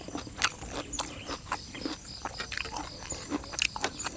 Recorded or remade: recorded